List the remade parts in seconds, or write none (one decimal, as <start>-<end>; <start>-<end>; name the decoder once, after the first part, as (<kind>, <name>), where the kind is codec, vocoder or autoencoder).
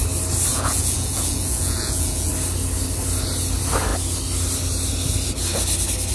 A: 0.5-2.3 (vocoder, Vocos)